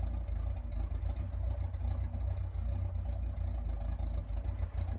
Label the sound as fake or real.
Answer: real